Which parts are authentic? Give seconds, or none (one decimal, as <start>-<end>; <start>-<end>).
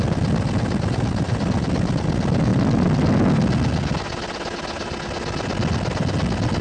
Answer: 0.0-6.6